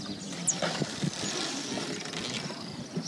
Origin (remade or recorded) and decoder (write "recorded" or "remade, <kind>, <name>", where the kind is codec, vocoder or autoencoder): recorded